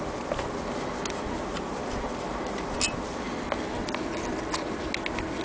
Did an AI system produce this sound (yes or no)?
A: no